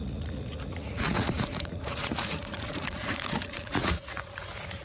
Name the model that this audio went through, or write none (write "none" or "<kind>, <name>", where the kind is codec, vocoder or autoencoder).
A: vocoder, Vocos